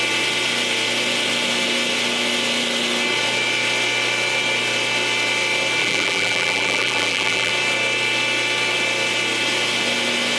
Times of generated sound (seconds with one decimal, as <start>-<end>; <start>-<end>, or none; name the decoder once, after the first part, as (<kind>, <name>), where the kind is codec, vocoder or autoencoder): 5.8-7.5 (vocoder, BigVGAN v2)